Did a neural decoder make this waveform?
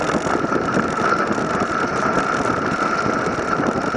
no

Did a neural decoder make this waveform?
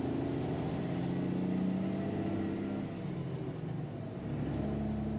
no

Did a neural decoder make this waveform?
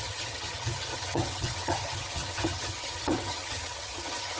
yes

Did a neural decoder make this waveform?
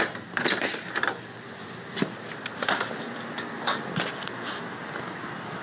no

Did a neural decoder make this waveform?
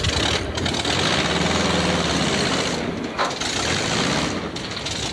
no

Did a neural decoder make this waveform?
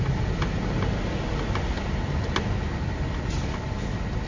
no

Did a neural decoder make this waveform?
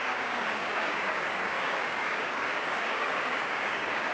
yes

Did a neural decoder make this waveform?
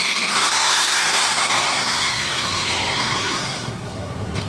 yes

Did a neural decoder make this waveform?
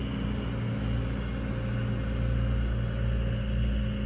no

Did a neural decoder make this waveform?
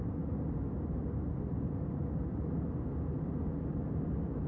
no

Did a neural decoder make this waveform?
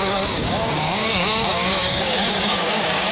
yes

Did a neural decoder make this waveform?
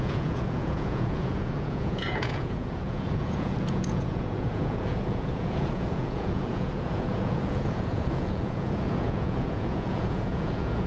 yes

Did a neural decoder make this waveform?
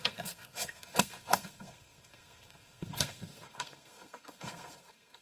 yes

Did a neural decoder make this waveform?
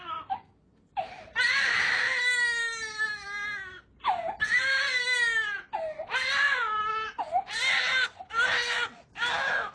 no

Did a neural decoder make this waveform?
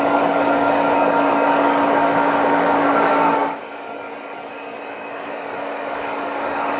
yes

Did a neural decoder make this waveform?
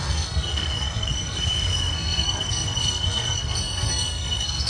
yes